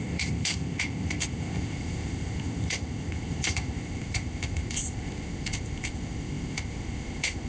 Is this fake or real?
fake